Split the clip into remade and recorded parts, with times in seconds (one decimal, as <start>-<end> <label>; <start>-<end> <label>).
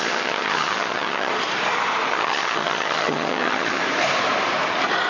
0.0-1.3 remade; 1.3-2.1 recorded; 2.1-3.8 remade; 3.8-5.1 recorded